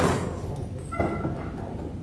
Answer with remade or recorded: recorded